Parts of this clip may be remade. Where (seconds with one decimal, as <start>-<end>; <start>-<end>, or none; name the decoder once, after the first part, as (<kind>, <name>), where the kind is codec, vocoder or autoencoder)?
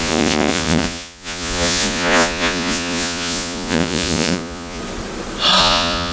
0.0-4.8 (vocoder, Vocos); 5.6-6.1